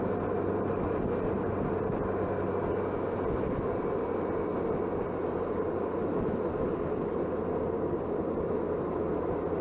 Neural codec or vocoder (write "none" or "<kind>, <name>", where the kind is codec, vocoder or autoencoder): none